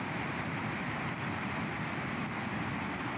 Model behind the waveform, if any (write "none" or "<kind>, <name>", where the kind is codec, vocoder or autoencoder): none